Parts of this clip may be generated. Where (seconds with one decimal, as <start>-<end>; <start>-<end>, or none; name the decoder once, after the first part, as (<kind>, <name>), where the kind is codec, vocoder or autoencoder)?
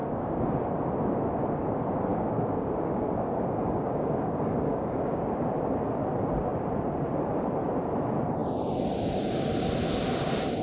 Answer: 0.0-0.7 (codec, DAC); 2.1-5.2